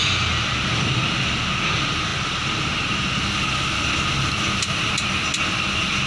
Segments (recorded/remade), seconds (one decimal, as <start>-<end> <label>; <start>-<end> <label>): 0.0-6.1 recorded